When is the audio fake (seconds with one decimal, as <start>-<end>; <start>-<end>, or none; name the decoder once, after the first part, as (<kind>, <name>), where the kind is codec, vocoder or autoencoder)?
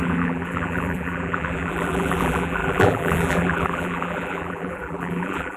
0.0-5.6 (vocoder, BigVGAN v2)